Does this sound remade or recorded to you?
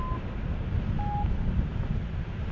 recorded